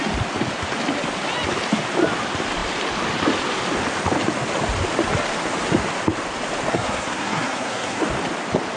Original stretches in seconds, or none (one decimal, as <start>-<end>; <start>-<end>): 0.0-6.7; 8.0-8.8